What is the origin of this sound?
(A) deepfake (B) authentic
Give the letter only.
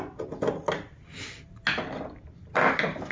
B